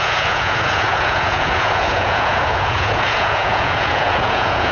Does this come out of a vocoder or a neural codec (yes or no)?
yes